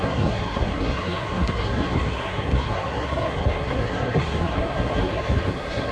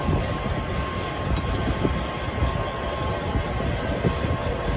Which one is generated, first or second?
first